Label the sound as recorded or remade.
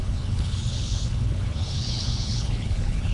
remade